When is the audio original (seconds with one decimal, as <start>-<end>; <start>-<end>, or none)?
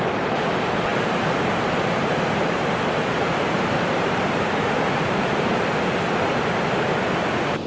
0.0-0.9; 5.5-7.7